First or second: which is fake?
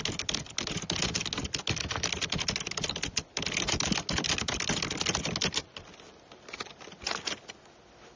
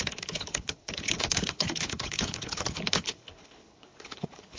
second